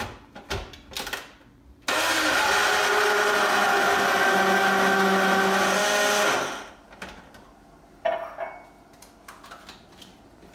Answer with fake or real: real